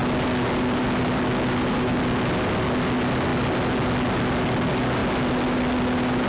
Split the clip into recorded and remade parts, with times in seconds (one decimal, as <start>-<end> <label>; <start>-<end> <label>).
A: 0.0-6.3 recorded

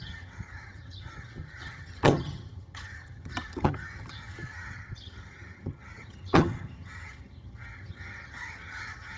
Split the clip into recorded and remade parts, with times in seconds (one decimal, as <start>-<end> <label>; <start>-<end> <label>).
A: 0.0-9.2 remade

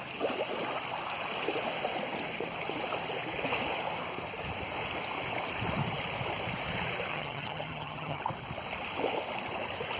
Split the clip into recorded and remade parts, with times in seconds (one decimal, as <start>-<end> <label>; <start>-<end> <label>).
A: 0.0-7.1 recorded; 7.1-8.2 remade; 8.2-10.0 recorded

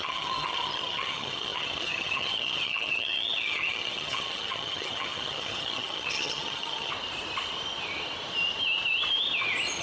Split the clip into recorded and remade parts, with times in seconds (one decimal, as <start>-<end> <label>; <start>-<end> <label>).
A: 0.0-6.9 remade; 6.9-9.8 recorded

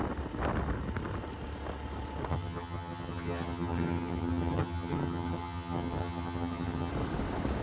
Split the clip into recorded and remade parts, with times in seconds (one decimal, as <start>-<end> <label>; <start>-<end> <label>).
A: 0.0-2.3 recorded; 2.3-6.9 remade; 6.9-7.6 recorded

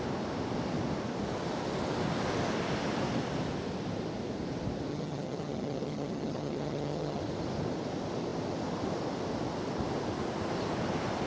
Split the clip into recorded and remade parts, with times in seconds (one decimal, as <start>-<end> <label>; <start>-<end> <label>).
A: 0.0-4.9 recorded; 4.9-7.2 remade; 7.2-11.3 recorded